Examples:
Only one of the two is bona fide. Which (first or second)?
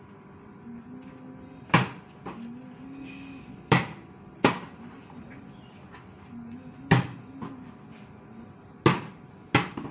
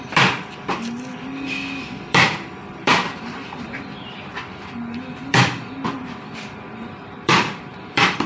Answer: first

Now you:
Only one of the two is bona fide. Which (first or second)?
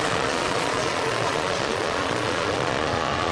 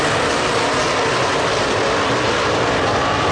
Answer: second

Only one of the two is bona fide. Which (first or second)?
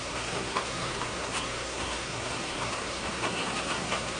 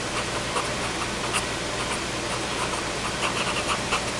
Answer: second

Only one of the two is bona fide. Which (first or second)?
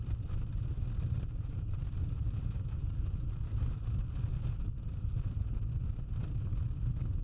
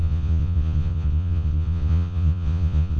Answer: first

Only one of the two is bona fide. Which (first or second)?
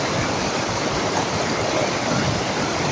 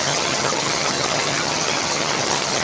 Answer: first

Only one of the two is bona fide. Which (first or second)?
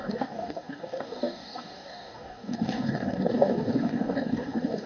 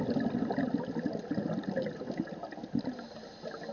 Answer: second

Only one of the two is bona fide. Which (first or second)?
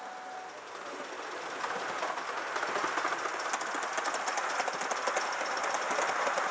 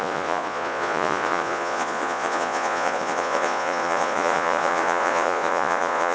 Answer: first